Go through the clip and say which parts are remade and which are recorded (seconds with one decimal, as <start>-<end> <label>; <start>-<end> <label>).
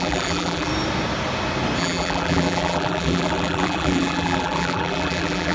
0.0-0.7 remade; 0.7-1.8 recorded; 1.8-5.5 remade